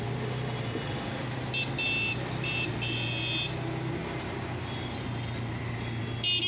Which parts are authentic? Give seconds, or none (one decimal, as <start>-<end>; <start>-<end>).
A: 0.0-6.5